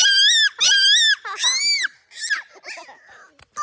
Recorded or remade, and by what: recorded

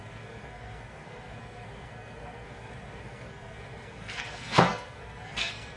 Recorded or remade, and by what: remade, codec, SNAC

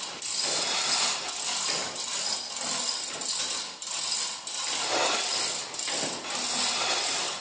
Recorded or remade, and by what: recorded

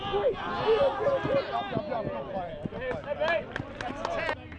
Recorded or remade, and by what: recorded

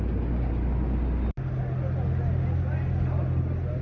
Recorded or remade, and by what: recorded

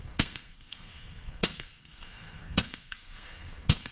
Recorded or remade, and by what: remade, codec, SNAC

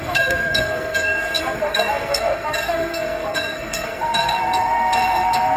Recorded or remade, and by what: remade, codec, SNAC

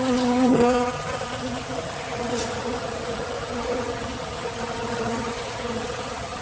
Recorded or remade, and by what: remade, vocoder, HiFi-GAN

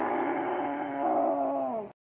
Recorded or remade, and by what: recorded